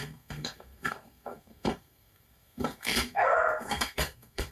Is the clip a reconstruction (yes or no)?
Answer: yes